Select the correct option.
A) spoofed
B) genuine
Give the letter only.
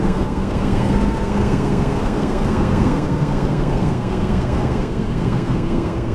A